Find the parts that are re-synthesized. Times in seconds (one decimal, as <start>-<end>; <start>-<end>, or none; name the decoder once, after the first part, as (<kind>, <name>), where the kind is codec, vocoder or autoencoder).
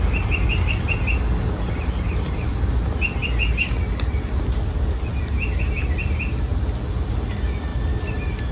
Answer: none